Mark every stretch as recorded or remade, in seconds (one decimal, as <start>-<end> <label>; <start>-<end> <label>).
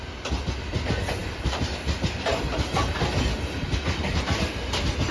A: 0.0-5.1 recorded